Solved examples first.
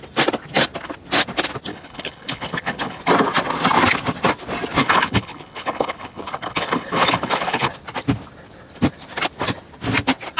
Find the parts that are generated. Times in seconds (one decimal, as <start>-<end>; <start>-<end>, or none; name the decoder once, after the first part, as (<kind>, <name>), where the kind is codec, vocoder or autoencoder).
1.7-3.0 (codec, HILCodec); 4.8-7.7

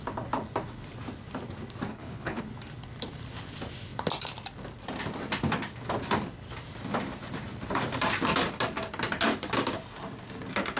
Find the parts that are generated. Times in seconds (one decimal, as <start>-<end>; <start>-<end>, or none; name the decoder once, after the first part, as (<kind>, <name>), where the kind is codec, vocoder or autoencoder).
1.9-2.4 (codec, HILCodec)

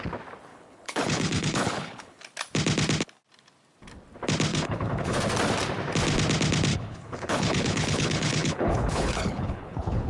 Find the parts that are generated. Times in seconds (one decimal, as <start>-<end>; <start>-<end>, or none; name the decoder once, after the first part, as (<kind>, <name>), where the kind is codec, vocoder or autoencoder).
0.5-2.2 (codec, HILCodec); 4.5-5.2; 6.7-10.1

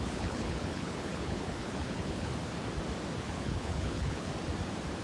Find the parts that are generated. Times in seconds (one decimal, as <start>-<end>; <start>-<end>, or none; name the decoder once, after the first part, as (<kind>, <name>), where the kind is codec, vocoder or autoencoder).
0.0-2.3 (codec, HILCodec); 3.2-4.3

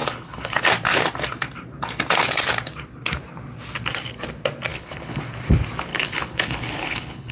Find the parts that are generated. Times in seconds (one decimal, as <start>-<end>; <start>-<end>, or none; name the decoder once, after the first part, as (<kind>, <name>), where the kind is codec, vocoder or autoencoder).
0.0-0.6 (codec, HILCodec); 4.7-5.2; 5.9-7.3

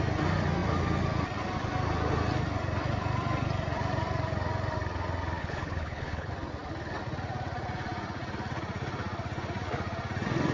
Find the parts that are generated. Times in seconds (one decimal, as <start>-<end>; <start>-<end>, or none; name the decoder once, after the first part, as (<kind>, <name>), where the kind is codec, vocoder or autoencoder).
5.4-6.3 (codec, HILCodec)

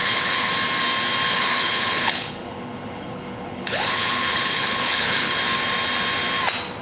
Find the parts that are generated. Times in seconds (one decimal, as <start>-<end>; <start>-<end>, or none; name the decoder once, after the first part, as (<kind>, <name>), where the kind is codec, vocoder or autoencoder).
0.0-0.5 (codec, HILCodec); 1.3-5.4

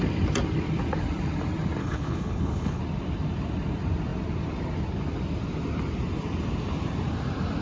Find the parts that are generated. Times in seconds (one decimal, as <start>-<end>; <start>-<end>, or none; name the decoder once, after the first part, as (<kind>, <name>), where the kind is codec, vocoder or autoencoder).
1.8-2.8 (codec, HILCodec)